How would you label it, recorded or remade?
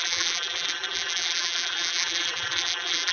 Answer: remade